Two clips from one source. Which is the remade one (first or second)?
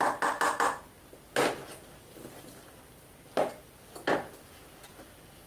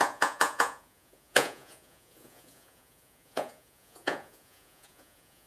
second